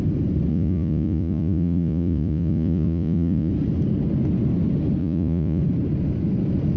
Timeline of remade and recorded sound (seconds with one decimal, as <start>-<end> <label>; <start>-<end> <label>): 0.0-0.5 recorded; 0.5-3.5 remade; 3.5-5.0 recorded; 5.0-5.6 remade; 5.6-6.8 recorded